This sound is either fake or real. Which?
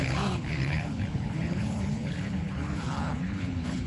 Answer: fake